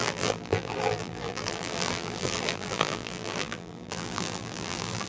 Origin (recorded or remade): remade